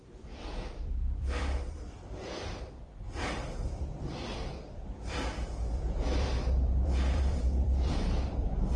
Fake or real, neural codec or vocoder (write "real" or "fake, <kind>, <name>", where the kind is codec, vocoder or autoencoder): fake, vocoder, BigVGAN v2